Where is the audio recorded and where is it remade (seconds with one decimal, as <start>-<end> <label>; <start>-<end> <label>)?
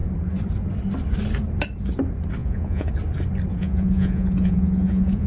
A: 0.0-2.4 recorded; 2.4-2.9 remade; 2.9-3.5 recorded; 3.5-5.3 remade